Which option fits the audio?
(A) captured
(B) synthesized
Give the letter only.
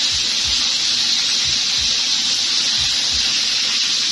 A